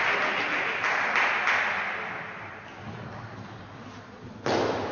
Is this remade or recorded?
recorded